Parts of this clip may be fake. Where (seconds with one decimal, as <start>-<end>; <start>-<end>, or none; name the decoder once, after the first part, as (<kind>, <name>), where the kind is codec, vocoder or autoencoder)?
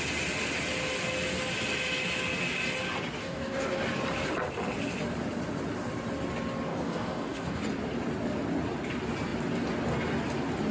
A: 3.2-3.8 (codec, DAC); 6.7-7.6